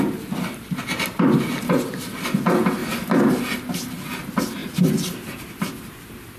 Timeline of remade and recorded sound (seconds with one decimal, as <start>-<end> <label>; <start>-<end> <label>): 0.0-2.8 recorded; 2.8-3.4 remade; 3.4-4.6 recorded; 4.6-5.7 remade; 5.7-6.4 recorded